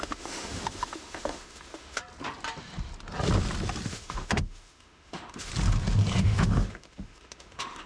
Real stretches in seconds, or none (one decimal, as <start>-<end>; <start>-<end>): 2.0-3.9; 5.5-6.2

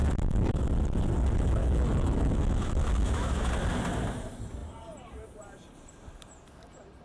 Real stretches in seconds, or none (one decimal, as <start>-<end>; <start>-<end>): 0.7-1.6; 3.5-7.0